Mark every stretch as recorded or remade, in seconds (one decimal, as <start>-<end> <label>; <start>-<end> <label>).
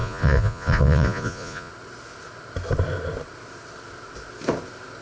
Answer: 0.0-1.7 remade; 1.7-5.0 recorded